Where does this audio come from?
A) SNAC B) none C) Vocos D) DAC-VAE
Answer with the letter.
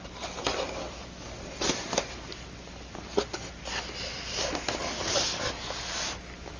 B